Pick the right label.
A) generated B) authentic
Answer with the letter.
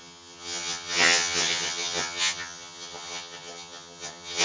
A